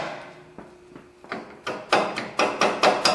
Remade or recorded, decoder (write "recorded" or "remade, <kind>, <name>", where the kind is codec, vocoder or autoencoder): recorded